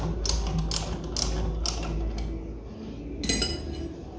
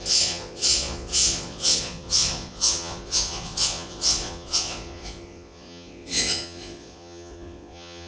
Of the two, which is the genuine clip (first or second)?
first